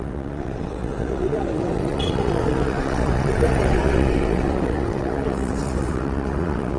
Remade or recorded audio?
remade